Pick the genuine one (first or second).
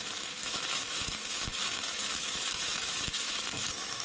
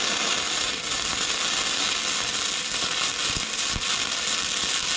second